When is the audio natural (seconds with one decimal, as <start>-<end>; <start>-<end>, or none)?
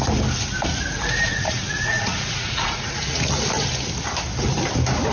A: 0.0-1.3; 3.4-5.1